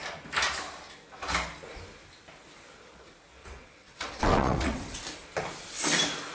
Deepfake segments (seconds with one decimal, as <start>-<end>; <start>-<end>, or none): 3.4-5.0